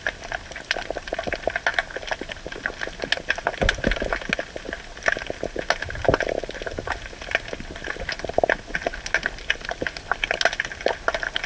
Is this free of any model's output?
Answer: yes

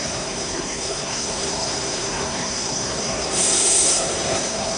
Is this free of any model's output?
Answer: no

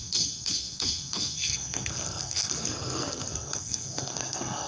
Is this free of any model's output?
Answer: no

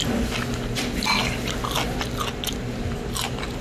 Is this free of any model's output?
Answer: yes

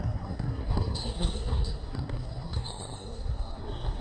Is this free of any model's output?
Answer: no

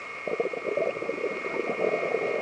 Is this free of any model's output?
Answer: yes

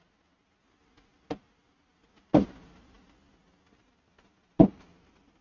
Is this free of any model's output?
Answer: yes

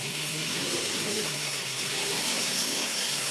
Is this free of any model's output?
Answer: no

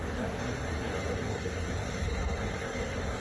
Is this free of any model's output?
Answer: no